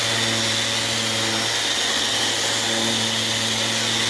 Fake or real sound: real